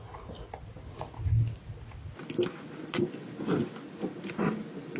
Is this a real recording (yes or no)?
yes